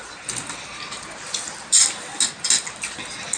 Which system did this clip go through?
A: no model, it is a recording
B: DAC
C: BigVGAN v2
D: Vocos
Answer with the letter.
A